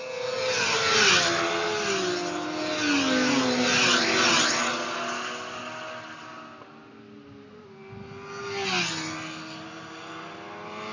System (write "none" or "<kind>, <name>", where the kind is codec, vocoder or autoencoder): none